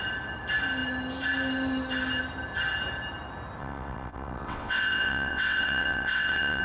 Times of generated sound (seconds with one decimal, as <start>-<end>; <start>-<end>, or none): 3.6-6.6